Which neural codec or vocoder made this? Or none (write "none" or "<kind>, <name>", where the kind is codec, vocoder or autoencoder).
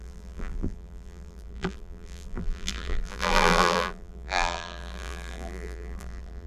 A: vocoder, BigVGAN v2